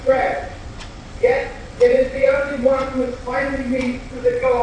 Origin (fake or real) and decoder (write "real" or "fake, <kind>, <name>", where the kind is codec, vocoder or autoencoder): fake, vocoder, WaveNeXt